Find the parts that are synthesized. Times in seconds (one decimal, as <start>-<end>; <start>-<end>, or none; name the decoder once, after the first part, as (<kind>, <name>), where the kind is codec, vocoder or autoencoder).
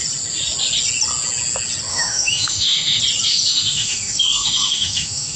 1.9-3.0 (autoencoder, DAC-VAE); 3.5-5.4